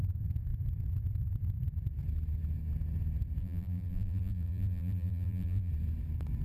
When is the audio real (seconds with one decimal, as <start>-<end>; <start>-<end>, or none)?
0.0-3.4; 5.7-6.4